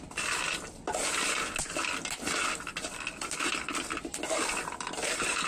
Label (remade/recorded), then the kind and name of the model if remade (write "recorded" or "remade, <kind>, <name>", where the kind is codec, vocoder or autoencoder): recorded